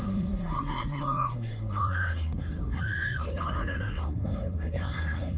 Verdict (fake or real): fake